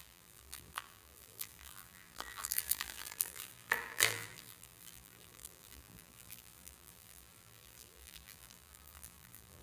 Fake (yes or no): yes